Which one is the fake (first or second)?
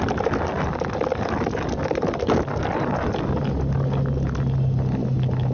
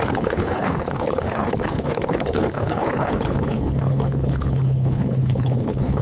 second